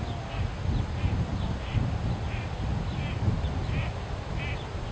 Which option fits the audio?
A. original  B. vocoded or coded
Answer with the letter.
A